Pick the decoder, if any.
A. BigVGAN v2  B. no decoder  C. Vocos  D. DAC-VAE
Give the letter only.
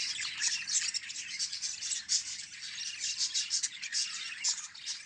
B